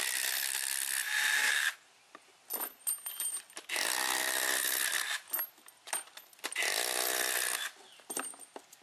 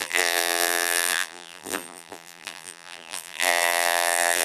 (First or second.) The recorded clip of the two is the first